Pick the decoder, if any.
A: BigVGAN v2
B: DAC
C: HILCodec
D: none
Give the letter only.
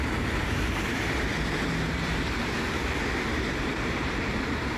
A